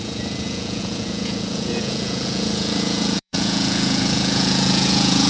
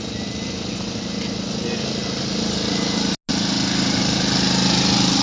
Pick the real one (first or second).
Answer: second